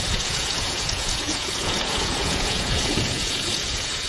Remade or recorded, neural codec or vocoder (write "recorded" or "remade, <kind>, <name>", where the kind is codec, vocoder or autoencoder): remade, vocoder, Vocos